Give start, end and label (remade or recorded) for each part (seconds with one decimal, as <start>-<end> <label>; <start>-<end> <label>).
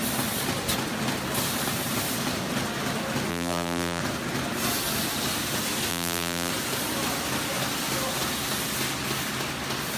0.0-3.3 recorded; 3.3-4.0 remade; 4.0-5.9 recorded; 5.9-6.5 remade; 6.5-10.0 recorded